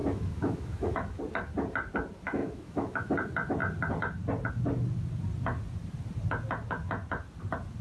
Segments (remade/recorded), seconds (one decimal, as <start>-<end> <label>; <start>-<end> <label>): 0.0-1.2 remade; 1.2-2.4 recorded; 2.4-3.1 remade; 3.1-7.8 recorded